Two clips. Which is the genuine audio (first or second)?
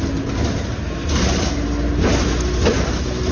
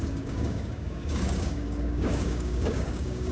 first